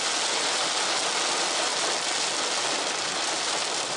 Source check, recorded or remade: recorded